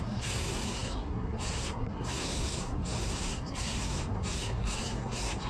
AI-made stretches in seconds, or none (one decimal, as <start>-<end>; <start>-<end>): 0.0-5.5